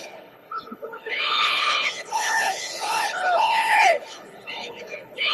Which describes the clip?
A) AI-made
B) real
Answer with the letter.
A